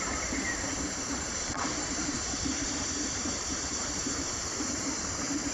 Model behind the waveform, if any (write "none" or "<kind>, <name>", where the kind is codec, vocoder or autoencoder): vocoder, BigVGAN v2